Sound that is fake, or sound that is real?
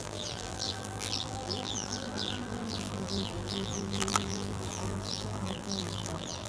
fake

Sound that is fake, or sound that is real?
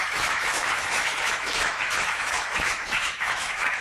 fake